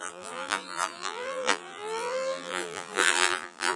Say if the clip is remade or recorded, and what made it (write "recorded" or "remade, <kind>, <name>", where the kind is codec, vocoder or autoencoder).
remade, vocoder, BigVGAN v2